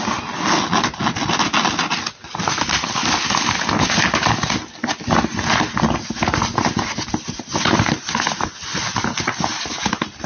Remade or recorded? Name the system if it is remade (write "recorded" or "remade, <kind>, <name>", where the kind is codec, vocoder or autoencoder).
recorded